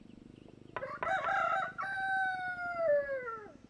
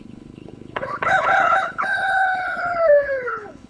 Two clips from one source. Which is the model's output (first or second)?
second